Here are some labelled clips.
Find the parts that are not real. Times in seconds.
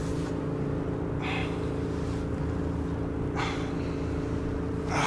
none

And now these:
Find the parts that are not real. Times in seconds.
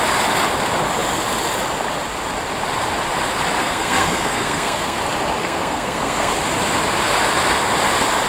3.6-5.0 (codec, SNAC); 5.4-6.3